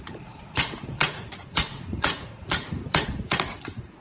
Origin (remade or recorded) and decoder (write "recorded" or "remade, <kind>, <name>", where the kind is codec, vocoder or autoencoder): remade, vocoder, Vocos